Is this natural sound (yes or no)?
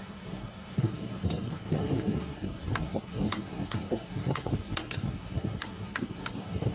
no